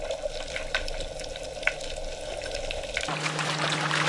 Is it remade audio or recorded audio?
recorded